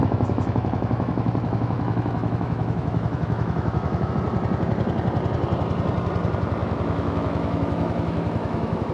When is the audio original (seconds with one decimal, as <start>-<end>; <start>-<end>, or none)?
4.1-6.6